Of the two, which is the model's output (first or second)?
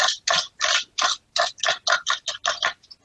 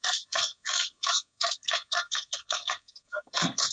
second